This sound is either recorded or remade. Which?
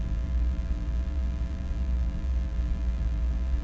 remade